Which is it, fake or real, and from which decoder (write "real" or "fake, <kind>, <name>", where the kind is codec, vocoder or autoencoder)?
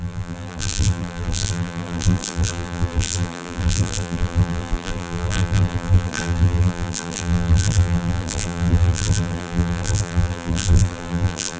fake, vocoder, BigVGAN v2